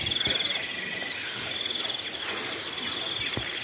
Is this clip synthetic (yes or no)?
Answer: no